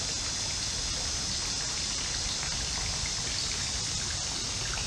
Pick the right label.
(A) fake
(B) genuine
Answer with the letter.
B